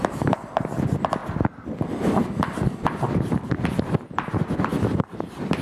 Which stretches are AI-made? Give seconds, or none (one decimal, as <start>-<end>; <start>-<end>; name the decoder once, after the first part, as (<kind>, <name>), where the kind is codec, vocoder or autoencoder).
4.7-5.6 (vocoder, BigVGAN v2)

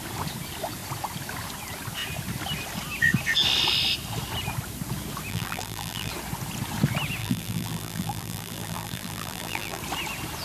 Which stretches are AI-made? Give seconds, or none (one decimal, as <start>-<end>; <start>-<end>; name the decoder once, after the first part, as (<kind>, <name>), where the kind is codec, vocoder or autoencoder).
5.3-6.1 (vocoder, BigVGAN v2); 7.2-9.8